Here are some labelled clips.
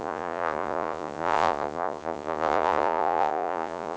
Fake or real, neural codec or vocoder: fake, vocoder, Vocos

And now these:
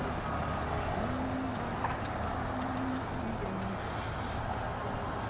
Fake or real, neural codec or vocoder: real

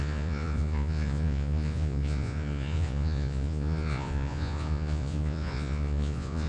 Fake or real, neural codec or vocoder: fake, vocoder, Vocos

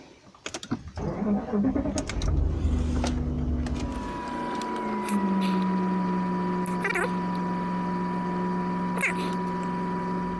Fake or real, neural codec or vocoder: real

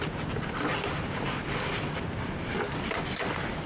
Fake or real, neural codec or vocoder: real